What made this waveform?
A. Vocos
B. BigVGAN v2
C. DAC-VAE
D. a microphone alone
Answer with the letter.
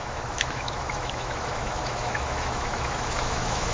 C